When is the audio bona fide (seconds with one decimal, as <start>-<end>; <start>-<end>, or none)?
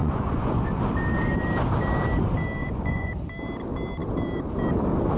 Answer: 0.6-2.6; 3.1-5.2